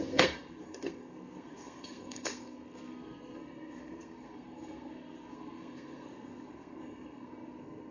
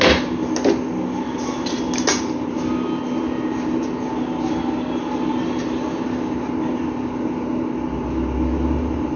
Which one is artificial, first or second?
first